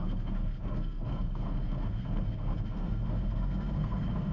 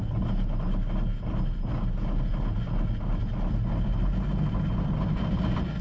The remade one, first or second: first